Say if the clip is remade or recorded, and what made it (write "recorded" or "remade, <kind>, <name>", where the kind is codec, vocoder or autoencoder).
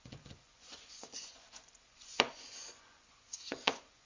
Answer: remade, vocoder, Vocos